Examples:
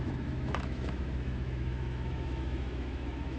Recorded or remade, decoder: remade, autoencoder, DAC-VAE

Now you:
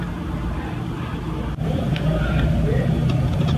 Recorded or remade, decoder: recorded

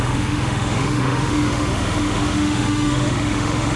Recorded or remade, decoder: remade, autoencoder, DAC-VAE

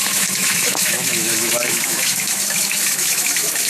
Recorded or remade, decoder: remade, autoencoder, DAC-VAE